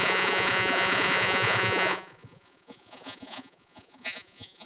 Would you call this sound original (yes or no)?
no